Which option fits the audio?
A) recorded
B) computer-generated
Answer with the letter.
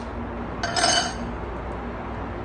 A